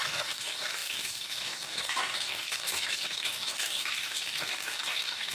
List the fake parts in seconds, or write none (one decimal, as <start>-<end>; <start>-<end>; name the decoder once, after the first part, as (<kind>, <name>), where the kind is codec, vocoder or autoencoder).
0.0-5.3 (codec, DAC)